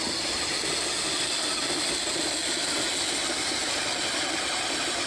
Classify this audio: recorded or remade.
recorded